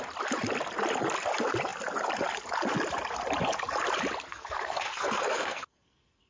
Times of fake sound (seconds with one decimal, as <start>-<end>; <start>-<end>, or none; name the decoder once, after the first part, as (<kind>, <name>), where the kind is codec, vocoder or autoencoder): 4.3-6.3 (codec, SNAC)